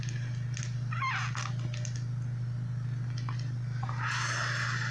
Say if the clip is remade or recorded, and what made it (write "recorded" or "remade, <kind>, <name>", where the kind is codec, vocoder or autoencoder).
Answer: recorded